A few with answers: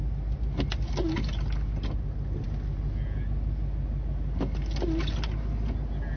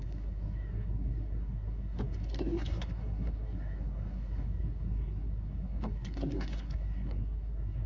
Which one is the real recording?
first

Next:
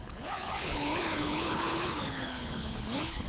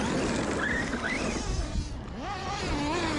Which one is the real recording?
second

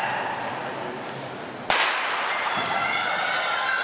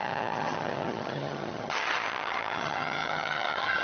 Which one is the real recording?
first